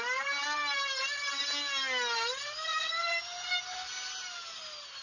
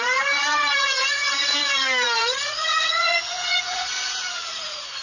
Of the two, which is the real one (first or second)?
first